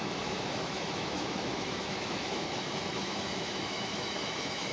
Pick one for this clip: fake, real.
fake